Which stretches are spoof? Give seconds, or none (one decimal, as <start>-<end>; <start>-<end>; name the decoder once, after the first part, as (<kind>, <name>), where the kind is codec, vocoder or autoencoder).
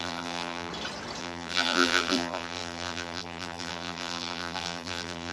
0.0-0.7 (vocoder, BigVGAN v2); 1.2-5.3